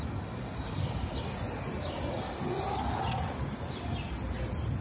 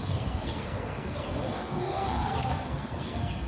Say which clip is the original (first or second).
first